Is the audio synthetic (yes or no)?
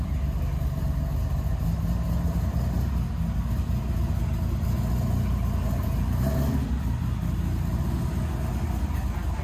no